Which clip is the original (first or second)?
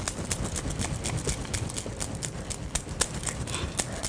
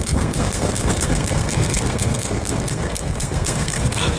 first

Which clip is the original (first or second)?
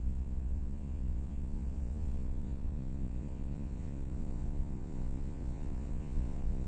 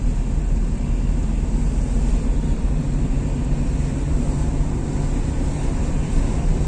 second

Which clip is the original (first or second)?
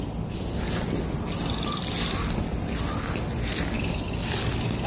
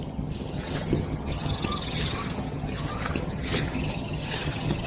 first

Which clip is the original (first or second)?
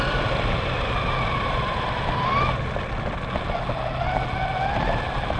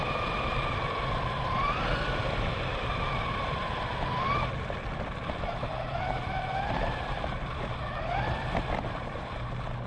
first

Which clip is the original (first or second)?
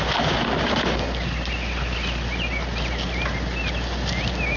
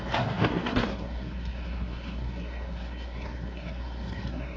first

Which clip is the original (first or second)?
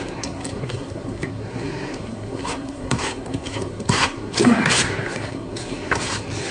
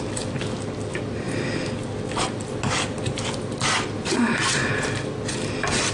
second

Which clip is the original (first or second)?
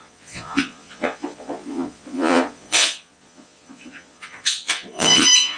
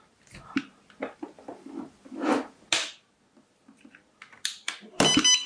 second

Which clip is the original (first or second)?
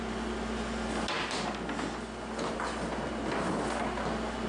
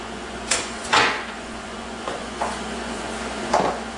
first